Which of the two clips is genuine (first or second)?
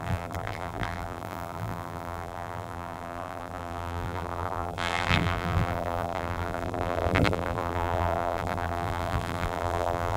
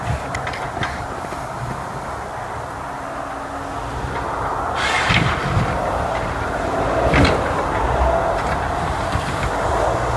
second